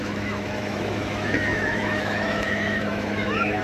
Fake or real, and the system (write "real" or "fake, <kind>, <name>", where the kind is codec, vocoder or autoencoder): fake, autoencoder, DAC-VAE